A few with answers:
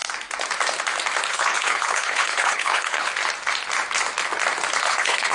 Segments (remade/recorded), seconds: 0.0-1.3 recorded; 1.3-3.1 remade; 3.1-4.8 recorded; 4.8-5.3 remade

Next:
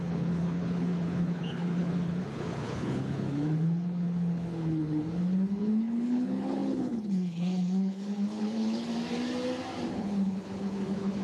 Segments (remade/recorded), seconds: 0.0-8.9 remade; 8.9-9.9 recorded; 9.9-11.2 remade

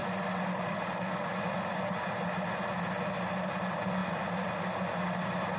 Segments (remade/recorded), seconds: 0.0-5.6 recorded

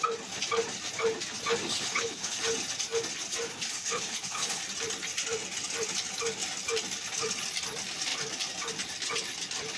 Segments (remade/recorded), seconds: 0.0-1.7 recorded; 1.7-2.4 remade; 2.4-3.5 recorded; 3.5-4.6 remade; 4.6-9.8 recorded

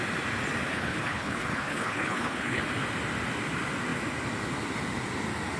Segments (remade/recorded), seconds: 0.0-0.7 recorded; 0.7-2.6 remade; 2.6-5.6 recorded

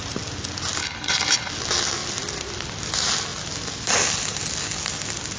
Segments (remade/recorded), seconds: 0.0-0.8 recorded; 0.8-1.5 remade; 1.5-5.4 recorded

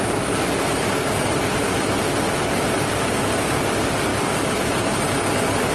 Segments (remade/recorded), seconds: 0.0-5.7 recorded

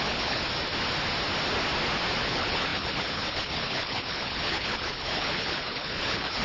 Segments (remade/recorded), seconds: 0.0-0.5 remade; 0.5-2.2 recorded; 2.2-6.4 remade